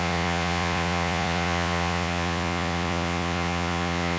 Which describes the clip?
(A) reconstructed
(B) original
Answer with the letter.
A